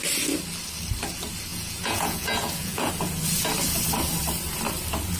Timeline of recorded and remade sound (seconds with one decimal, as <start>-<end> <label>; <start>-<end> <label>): 0.0-1.5 recorded; 1.5-2.9 remade; 2.9-5.2 recorded